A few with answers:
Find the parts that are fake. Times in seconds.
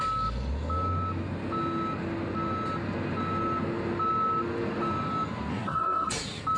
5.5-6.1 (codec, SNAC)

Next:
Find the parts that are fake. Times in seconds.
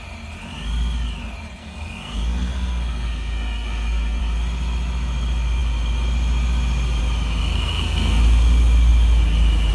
1.6-4.2 (codec, SNAC); 7.4-8.2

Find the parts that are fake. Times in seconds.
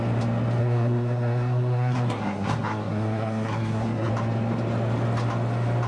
0.6-4.1 (codec, SNAC)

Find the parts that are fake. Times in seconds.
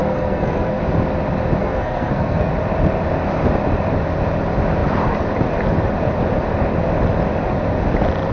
0.0-0.8 (codec, SNAC); 1.6-2.5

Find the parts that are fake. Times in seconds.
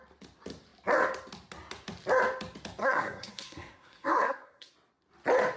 2.8-4.7 (codec, SNAC)